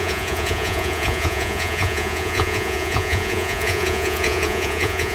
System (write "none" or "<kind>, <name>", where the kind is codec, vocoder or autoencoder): vocoder, Vocos